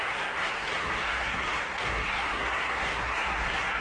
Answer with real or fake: fake